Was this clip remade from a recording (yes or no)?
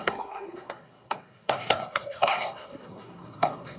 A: yes